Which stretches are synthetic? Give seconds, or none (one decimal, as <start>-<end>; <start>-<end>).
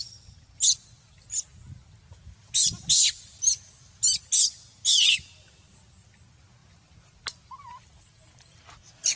none